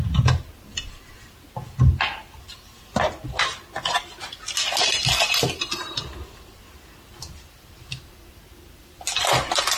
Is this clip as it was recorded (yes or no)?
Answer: yes